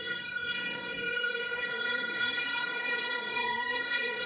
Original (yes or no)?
no